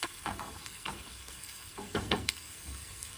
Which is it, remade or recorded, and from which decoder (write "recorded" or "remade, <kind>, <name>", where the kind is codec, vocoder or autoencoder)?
remade, codec, SNAC